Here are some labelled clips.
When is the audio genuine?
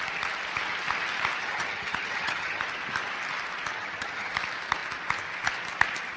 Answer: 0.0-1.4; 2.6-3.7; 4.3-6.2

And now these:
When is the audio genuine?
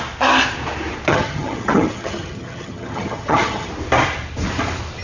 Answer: 0.0-1.1; 3.7-5.0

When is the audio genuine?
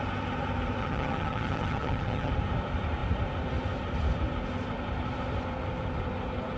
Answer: 0.0-0.8; 2.3-6.6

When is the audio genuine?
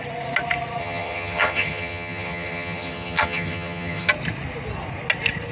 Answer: 0.0-0.8; 4.1-5.5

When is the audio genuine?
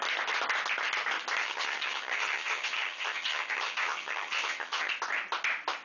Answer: 0.0-1.4; 4.9-5.8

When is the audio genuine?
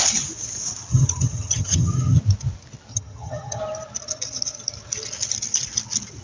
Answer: 0.0-0.9; 2.2-2.9; 3.6-6.2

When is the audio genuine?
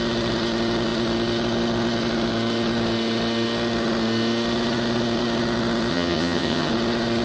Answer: 0.0-5.9; 6.7-7.2